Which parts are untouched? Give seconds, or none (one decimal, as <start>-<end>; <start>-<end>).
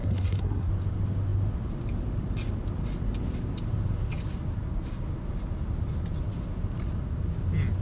0.7-7.8